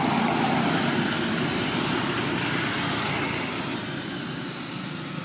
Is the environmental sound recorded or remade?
recorded